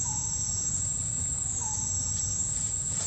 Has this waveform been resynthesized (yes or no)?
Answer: yes